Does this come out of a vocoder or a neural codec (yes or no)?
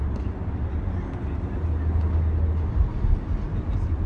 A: no